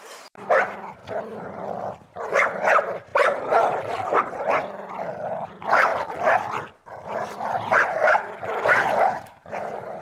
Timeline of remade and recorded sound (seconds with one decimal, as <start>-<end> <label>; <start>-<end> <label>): 0.0-1.0 remade; 1.0-2.1 recorded; 2.1-5.9 remade; 5.9-7.0 recorded; 7.0-10.0 remade

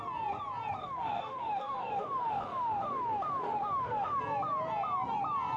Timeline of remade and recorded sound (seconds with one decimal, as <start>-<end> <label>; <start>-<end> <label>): 0.0-0.8 recorded; 0.8-4.2 remade; 4.2-5.6 recorded

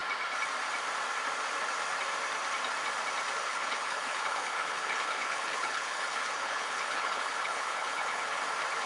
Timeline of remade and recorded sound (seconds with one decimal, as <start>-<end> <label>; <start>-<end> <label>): 0.0-3.4 recorded; 3.4-8.4 remade; 8.4-8.9 recorded

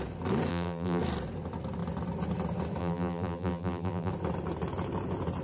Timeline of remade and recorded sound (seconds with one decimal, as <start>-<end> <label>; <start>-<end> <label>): 0.0-0.5 recorded; 0.5-1.0 remade; 1.0-2.8 recorded; 2.8-4.1 remade; 4.1-5.4 recorded

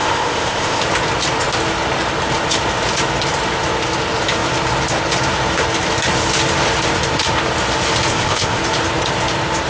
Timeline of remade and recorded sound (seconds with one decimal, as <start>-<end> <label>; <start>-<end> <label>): 0.0-0.8 remade; 0.8-8.1 recorded; 8.1-8.6 remade; 8.6-9.7 recorded